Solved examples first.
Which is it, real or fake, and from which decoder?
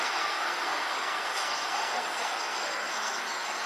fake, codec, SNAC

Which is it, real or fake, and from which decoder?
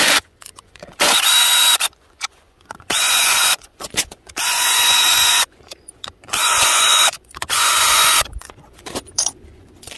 fake, vocoder, Vocos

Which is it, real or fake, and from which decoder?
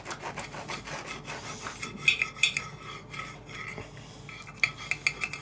real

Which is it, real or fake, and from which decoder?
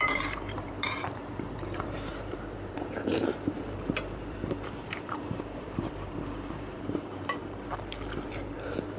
fake, vocoder, BigVGAN v2